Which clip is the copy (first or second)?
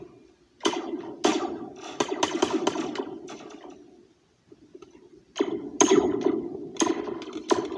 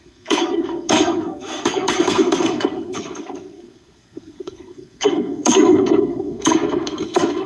second